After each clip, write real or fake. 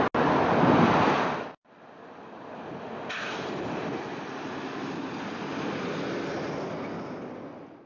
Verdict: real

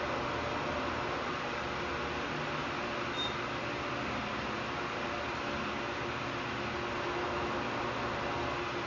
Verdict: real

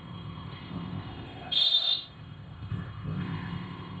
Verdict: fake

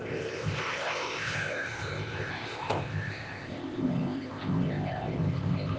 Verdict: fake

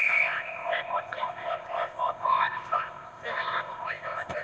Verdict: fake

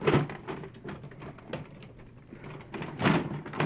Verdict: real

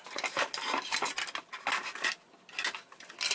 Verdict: real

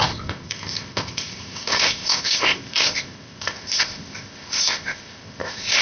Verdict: fake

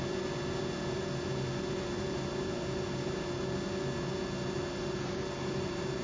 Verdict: real